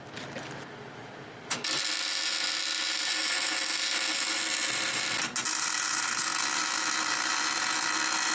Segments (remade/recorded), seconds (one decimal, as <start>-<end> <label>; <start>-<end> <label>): 0.0-8.3 recorded